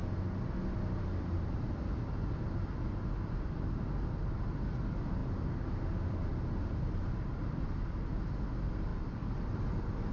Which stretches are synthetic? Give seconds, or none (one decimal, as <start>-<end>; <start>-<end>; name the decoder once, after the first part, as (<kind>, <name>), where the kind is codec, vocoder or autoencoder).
none